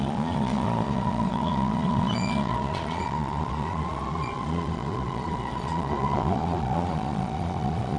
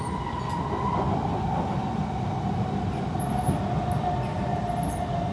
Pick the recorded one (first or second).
second